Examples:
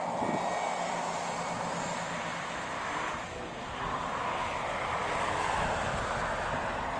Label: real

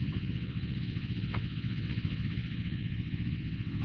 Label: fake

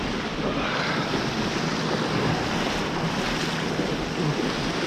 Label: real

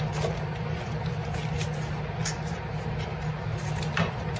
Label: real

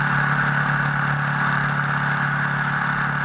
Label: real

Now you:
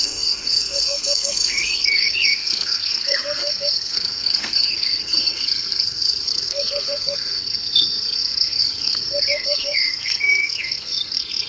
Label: fake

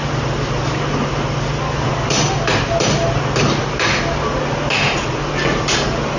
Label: real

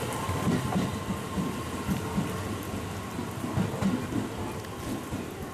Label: real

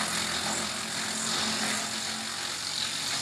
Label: real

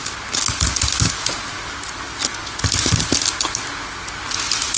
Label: real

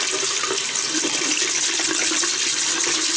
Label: real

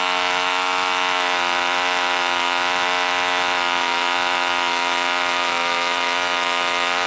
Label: fake